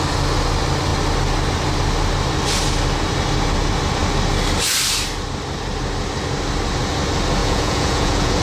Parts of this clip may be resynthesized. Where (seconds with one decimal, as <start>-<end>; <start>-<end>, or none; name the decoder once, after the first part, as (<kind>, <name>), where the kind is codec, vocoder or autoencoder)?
7.4-8.4 (vocoder, Vocos)